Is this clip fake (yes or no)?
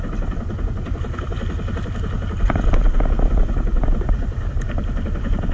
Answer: no